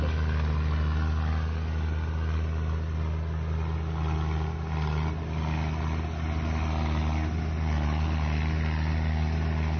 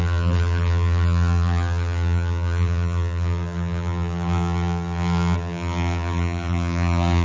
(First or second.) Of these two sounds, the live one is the first